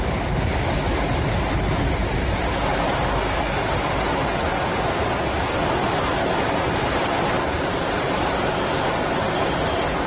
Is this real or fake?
real